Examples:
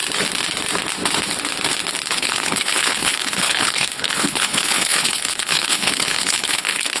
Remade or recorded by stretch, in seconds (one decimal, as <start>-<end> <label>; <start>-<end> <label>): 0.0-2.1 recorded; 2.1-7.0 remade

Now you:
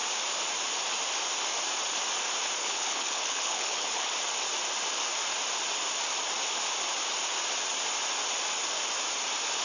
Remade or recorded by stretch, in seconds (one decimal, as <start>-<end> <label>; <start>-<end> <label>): 0.0-2.6 recorded; 2.6-4.1 remade; 4.1-9.6 recorded

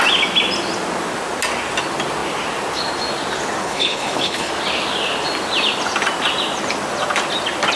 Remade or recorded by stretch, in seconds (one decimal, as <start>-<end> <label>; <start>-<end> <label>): 0.0-3.6 recorded; 3.6-4.5 remade; 4.5-7.8 recorded